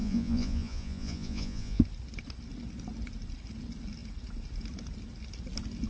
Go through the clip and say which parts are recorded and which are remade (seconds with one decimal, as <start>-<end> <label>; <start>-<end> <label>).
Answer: 0.0-1.8 remade; 1.8-5.9 recorded